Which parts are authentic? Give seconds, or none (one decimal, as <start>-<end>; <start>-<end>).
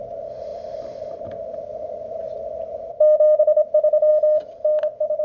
0.0-5.2